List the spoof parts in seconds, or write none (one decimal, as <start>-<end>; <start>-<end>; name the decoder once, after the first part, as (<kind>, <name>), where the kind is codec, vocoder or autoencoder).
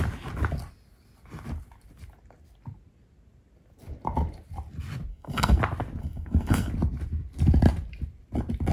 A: 5.1-5.6 (codec, SNAC); 6.0-6.7